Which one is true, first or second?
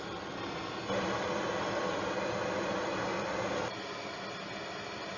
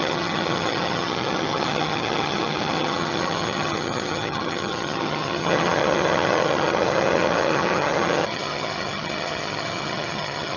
first